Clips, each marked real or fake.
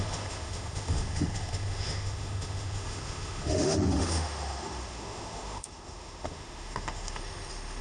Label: fake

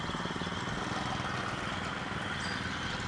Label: real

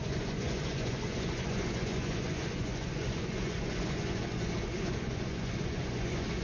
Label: fake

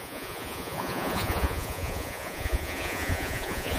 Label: fake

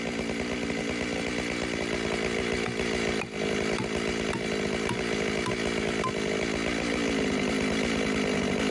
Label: real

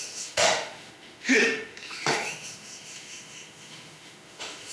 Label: fake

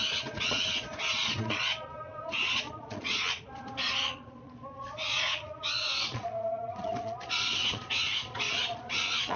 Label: fake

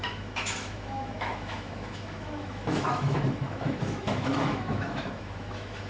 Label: fake